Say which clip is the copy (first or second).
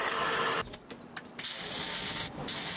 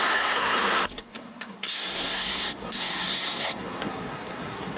second